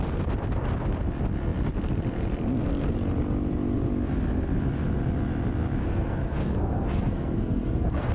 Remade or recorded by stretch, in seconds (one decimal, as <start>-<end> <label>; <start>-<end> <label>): 0.0-5.8 recorded; 5.8-8.1 remade